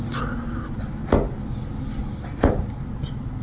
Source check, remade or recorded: recorded